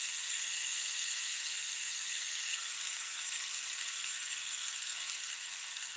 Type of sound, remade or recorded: remade